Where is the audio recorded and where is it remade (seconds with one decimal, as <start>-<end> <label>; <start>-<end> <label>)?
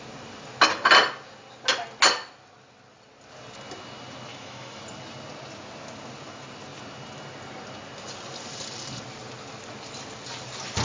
0.0-4.3 recorded; 4.3-4.8 remade; 4.8-10.8 recorded